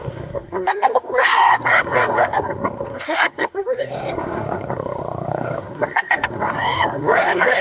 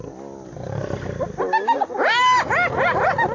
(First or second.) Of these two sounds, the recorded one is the second